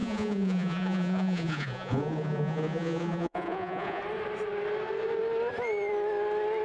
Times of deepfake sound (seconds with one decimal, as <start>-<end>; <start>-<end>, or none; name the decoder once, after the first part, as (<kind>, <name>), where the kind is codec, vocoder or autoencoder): 0.0-4.0 (vocoder, Vocos)

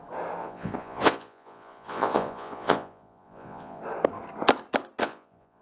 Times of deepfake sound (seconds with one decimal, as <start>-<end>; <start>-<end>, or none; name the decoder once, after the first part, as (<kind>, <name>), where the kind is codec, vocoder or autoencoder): 0.4-3.8 (vocoder, Vocos); 5.0-5.6

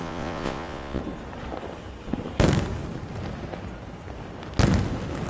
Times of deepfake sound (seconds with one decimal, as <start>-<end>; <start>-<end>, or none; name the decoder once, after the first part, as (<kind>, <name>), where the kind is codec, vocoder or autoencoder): 0.0-1.0 (vocoder, Vocos)

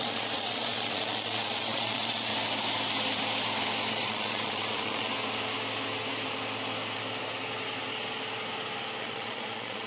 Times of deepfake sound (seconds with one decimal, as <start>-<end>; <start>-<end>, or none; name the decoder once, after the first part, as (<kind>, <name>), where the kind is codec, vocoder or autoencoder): 0.0-2.3 (vocoder, Vocos); 3.9-5.1; 9.0-9.9